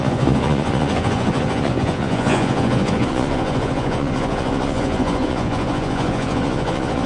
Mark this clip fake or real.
fake